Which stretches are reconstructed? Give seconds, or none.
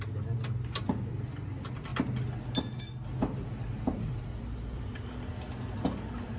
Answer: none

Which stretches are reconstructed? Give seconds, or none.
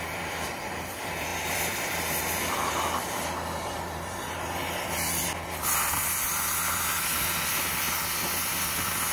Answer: none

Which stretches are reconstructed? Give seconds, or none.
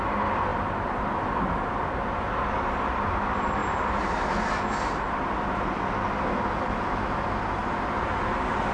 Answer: 0.5-1.2 (vocoder, BigVGAN v2)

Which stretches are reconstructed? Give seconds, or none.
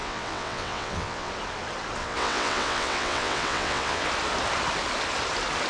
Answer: 0.0-1.3 (vocoder, WaveNeXt); 2.0-4.1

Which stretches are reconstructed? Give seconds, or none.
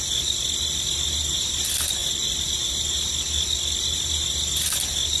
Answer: 2.0-2.8 (vocoder, BigVGAN v2)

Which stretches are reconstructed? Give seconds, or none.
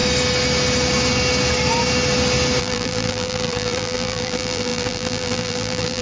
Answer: 2.6-6.0 (vocoder, BigVGAN v2)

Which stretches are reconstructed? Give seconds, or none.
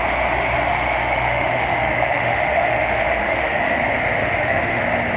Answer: 0.7-3.8 (autoencoder, DAC-VAE); 4.2-4.8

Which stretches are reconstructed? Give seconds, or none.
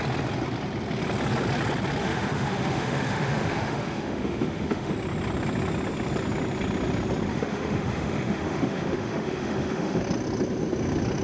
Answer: 2.0-4.9 (autoencoder, DAC-VAE); 7.3-10.0